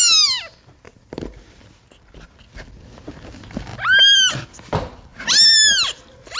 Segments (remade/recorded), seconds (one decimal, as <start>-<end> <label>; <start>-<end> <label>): 0.0-6.4 recorded